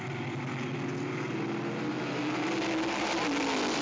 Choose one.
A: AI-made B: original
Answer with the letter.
B